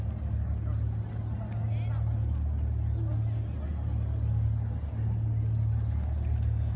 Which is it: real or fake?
real